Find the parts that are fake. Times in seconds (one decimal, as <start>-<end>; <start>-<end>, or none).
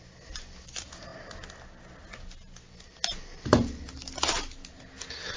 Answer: none